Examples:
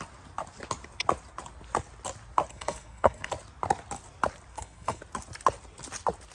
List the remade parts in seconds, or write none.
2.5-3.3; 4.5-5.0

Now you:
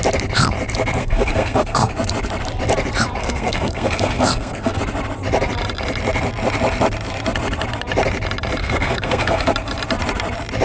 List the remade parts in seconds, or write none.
1.0-1.9; 3.2-4.8; 8.6-9.5

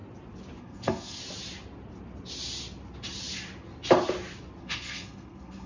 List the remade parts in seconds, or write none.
0.6-1.2; 4.6-5.7

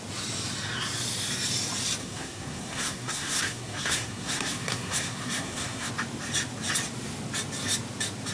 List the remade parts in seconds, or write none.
2.0-5.9

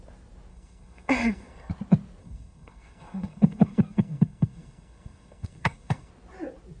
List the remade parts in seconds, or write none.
0.5-1.7; 2.2-6.1